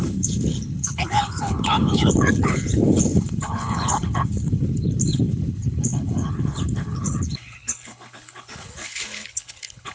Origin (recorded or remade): remade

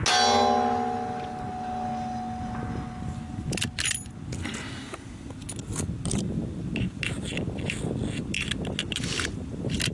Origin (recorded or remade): recorded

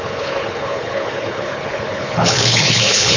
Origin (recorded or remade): remade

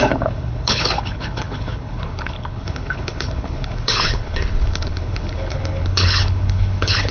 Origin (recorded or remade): remade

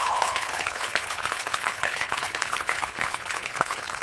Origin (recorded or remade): remade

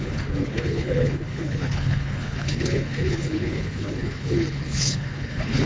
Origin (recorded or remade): remade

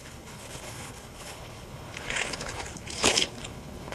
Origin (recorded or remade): remade